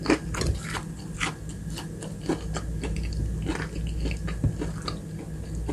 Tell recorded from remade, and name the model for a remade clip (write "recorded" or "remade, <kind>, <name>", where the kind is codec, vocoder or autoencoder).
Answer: recorded